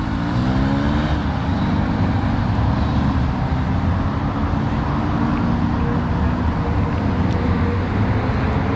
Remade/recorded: recorded